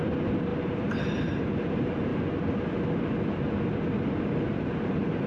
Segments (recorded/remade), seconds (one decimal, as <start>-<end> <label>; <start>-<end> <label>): 0.0-2.1 remade; 2.1-4.2 recorded; 4.2-5.3 remade